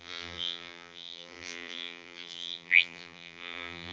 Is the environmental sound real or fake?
fake